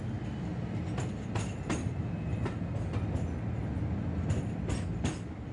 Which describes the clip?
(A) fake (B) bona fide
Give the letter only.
B